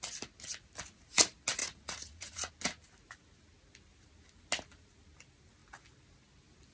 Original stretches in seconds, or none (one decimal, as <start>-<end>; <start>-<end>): 0.0-1.6; 2.5-6.7